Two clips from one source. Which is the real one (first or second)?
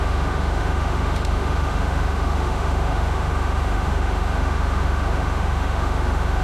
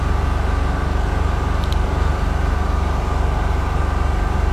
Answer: second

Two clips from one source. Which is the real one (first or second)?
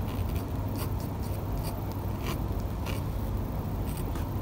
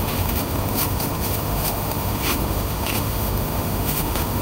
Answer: first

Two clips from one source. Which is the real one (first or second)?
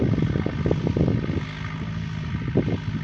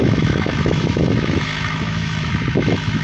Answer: first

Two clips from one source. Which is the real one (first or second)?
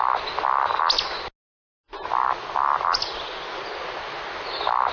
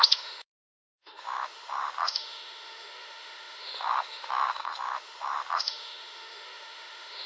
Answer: first